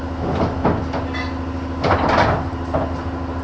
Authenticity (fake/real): real